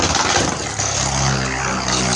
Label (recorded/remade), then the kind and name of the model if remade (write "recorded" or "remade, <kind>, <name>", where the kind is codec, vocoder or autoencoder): recorded